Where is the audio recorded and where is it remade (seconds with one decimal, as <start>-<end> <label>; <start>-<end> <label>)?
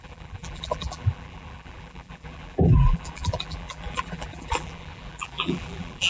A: 0.0-6.1 remade